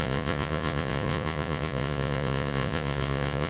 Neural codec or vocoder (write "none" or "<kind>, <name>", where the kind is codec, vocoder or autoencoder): vocoder, Vocos